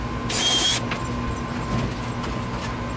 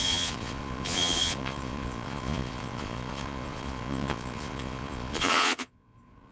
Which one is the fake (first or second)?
second